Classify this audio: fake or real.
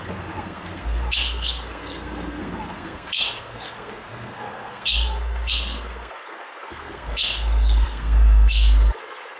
fake